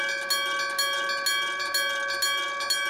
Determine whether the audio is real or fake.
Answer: real